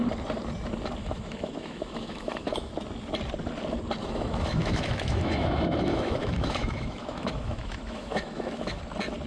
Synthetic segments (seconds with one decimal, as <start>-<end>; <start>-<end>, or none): 1.0-2.7; 4.0-8.8